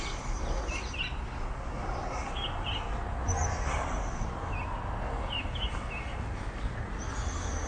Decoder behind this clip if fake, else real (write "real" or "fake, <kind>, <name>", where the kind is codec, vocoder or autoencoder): real